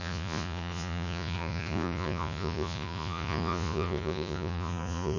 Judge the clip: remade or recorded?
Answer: remade